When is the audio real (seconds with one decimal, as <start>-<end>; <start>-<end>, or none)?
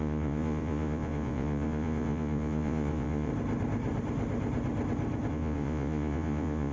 3.3-5.3